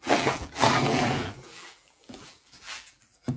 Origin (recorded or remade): remade